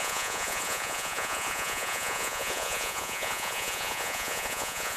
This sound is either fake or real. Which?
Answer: fake